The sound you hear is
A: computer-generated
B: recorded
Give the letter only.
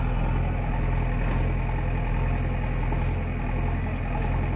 B